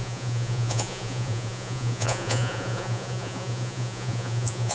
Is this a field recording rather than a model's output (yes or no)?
no